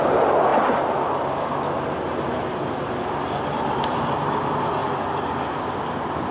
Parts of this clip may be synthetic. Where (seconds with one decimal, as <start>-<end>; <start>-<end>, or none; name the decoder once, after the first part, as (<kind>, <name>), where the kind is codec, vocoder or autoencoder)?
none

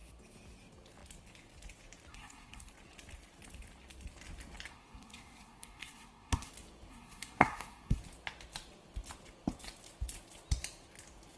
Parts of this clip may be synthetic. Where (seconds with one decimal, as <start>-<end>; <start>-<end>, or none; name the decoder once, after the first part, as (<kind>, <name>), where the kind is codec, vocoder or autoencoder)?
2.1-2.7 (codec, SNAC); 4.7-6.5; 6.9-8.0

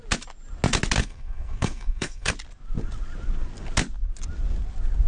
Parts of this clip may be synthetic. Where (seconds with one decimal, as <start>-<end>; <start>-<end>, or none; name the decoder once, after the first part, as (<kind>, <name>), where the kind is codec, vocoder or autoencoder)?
1.0-2.3 (codec, SNAC)